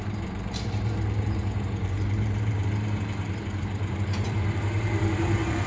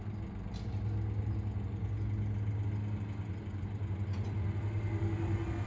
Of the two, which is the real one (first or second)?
second